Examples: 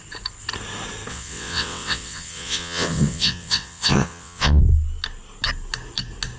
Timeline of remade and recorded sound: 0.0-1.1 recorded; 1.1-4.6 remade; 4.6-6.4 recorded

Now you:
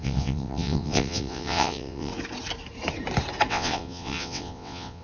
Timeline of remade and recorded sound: 0.0-2.1 remade; 2.1-3.5 recorded; 3.5-5.0 remade

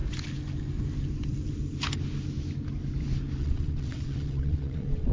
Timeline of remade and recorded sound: 0.0-3.4 recorded; 3.4-5.1 remade

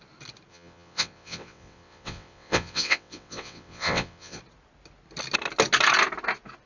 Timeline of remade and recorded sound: 0.0-0.5 recorded; 0.5-4.4 remade; 4.4-6.7 recorded

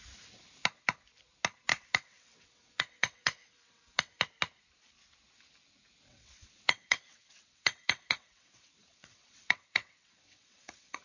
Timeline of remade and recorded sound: 0.0-1.7 recorded; 1.7-4.2 remade; 4.2-6.1 recorded; 6.1-11.0 remade

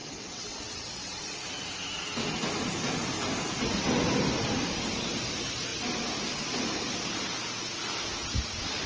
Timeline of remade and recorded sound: 0.0-1.4 remade; 1.4-8.9 recorded

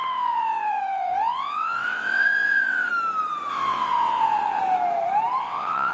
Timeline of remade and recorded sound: 0.0-2.9 remade; 2.9-3.5 recorded; 3.5-4.6 remade; 4.6-5.4 recorded; 5.4-5.9 remade

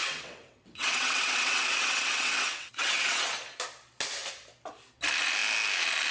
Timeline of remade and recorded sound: 0.0-3.2 remade; 3.2-6.1 recorded